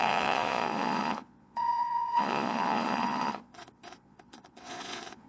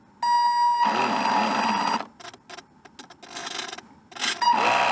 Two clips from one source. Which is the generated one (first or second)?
first